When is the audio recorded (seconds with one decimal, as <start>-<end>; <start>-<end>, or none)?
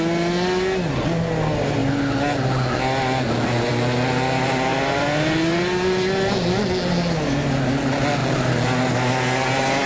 0.0-9.9